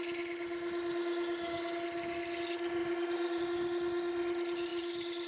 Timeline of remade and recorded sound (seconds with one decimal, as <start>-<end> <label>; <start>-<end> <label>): 0.0-2.8 recorded; 2.8-3.4 remade; 3.4-4.7 recorded; 4.7-5.3 remade